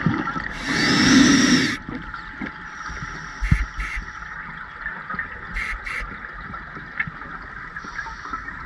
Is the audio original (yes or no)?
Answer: yes